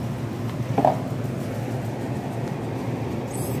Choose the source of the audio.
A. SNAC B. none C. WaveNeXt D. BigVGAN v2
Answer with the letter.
B